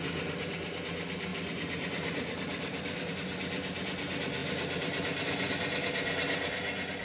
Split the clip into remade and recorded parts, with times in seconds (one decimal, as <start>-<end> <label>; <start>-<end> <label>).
0.0-7.0 recorded